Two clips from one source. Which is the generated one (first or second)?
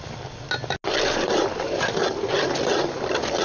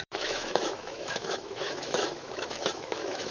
second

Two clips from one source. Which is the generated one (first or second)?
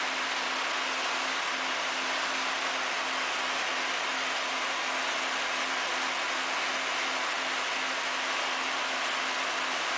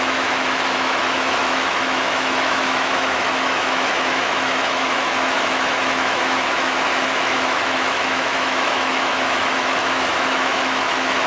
second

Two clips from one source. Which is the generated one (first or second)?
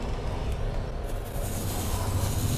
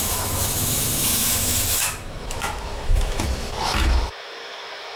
second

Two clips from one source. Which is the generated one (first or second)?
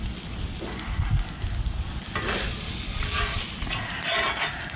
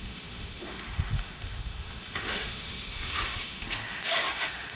second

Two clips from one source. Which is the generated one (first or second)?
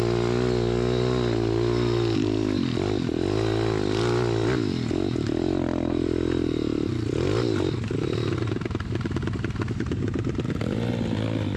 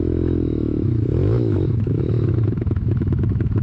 second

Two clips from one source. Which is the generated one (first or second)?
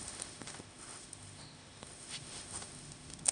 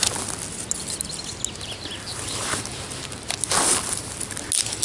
first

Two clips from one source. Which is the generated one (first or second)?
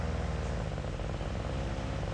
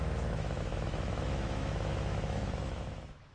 second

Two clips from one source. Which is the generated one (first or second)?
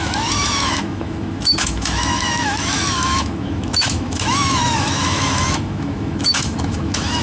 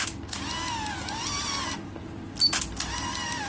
first